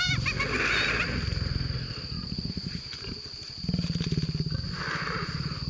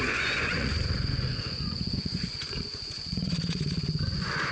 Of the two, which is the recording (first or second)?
first